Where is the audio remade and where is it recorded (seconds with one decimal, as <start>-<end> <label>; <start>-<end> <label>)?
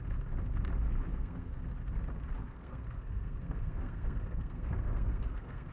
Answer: 0.0-1.1 recorded; 1.1-1.6 remade; 1.6-2.4 recorded; 2.4-5.7 remade